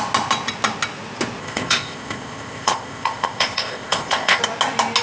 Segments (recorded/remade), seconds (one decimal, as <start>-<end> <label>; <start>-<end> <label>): 0.0-1.4 recorded; 1.4-4.4 remade; 4.4-5.0 recorded